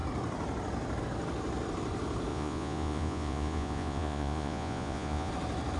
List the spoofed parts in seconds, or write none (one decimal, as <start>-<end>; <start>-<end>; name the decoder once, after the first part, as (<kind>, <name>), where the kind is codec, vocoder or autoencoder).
2.3-5.3 (vocoder, Vocos)